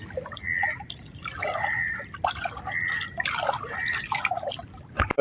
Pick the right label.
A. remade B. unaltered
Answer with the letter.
B